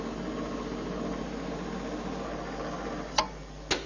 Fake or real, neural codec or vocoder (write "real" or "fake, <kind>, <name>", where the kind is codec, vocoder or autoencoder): real